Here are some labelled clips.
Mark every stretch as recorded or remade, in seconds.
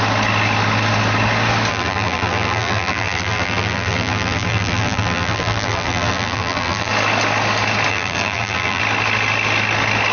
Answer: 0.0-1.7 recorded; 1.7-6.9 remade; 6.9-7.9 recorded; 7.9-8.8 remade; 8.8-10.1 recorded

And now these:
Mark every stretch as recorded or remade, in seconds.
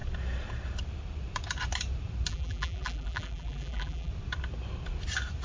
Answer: 0.0-2.3 recorded; 2.3-4.1 remade; 4.1-5.4 recorded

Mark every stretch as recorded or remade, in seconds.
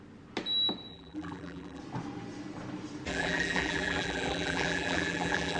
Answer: 0.0-0.9 recorded; 0.9-1.8 remade; 1.8-3.1 recorded; 3.1-5.6 remade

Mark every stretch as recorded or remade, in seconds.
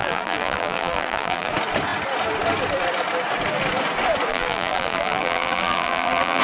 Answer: 0.0-1.5 remade; 1.5-4.3 recorded; 4.3-6.4 remade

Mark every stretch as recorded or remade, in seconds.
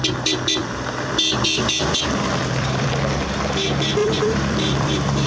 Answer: 0.0-0.6 recorded; 0.6-2.9 remade; 2.9-4.0 recorded; 4.0-5.3 remade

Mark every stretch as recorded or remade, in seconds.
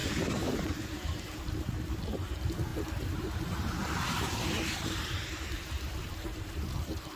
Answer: 0.0-7.2 remade